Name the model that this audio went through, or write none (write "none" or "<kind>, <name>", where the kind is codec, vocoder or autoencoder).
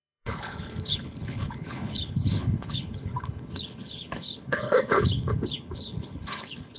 codec, HILCodec